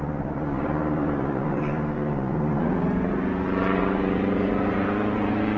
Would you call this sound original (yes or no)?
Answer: no